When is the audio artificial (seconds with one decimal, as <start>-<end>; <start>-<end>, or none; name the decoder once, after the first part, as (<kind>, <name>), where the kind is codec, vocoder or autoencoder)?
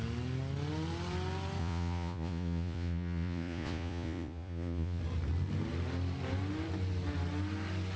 1.6-5.0 (vocoder, Vocos)